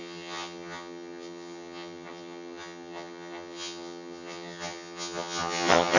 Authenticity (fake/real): fake